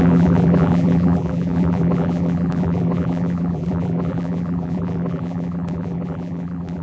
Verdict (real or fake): fake